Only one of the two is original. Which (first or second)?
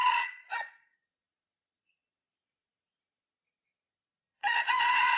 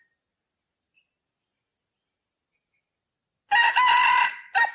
second